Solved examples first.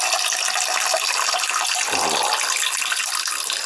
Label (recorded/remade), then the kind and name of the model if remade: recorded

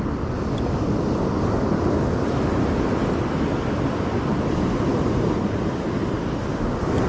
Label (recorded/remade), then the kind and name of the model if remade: recorded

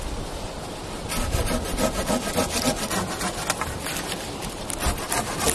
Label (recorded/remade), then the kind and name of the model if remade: recorded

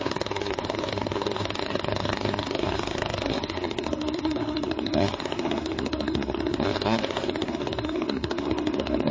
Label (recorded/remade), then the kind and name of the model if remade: remade, codec, SNAC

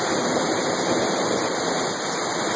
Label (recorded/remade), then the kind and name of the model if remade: recorded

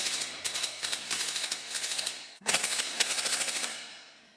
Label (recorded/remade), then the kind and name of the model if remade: remade, codec, SNAC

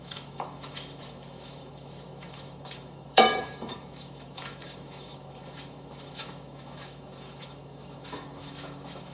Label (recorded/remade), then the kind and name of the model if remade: remade, autoencoder, DAC-VAE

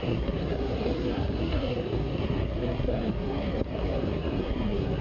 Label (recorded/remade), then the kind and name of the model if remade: remade, codec, SNAC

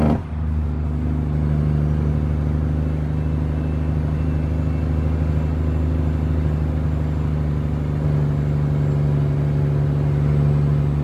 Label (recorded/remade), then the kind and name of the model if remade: recorded